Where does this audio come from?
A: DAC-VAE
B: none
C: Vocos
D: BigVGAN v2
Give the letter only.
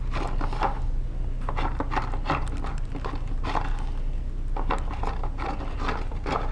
B